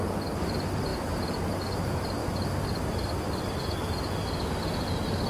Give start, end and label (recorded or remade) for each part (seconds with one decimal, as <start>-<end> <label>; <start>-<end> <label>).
0.0-5.3 recorded